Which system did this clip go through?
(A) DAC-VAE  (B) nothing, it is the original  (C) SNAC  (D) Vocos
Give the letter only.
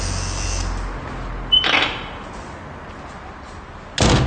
B